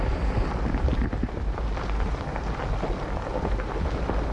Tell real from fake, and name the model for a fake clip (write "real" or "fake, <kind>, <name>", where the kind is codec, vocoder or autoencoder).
real